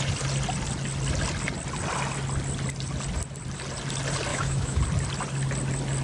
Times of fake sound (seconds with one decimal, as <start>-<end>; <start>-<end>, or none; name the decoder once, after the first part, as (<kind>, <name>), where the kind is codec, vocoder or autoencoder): 4.3-4.8 (autoencoder, DAC-VAE)